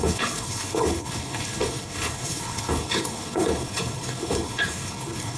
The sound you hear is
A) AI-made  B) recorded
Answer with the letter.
A